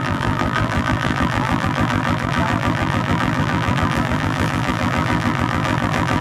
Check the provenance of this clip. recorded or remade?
remade